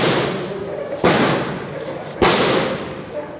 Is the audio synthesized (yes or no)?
no